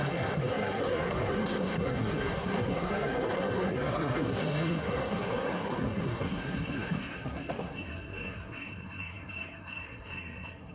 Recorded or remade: remade